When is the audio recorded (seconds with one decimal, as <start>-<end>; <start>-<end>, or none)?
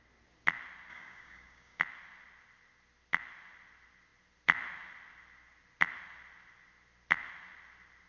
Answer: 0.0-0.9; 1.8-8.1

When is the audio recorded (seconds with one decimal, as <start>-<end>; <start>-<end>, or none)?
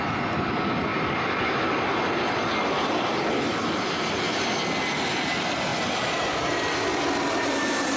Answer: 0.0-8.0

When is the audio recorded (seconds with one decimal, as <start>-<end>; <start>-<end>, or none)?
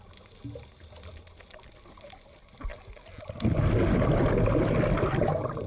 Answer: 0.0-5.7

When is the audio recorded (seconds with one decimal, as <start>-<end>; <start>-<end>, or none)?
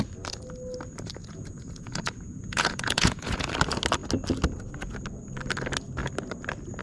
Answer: 0.0-1.2; 3.5-6.8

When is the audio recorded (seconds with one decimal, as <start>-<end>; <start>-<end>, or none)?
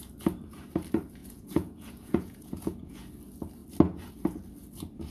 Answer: 0.0-1.2; 3.1-5.1